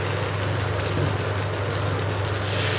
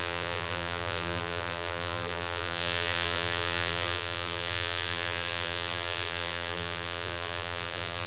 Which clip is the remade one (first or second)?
second